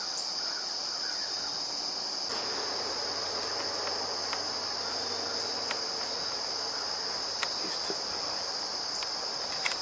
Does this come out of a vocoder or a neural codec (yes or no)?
no